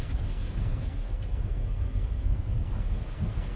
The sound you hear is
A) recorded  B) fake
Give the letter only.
B